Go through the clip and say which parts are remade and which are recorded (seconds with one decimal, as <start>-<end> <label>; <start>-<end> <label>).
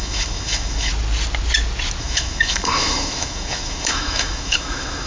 0.0-0.9 remade; 0.9-2.0 recorded; 2.0-5.1 remade